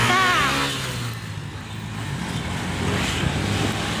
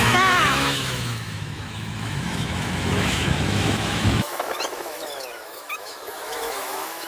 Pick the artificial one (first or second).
second